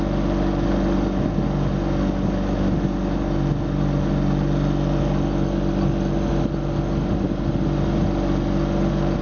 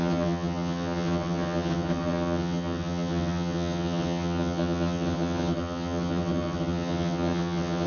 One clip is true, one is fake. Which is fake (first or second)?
second